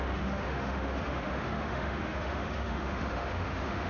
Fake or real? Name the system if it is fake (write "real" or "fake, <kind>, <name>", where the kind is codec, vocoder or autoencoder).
fake, autoencoder, DAC-VAE